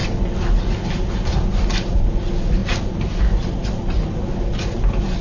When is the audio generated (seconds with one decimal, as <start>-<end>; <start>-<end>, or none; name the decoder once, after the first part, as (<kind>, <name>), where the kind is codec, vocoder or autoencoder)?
none